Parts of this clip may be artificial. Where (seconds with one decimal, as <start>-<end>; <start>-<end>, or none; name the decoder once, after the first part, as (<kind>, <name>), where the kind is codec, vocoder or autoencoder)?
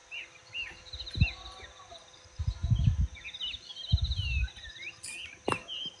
none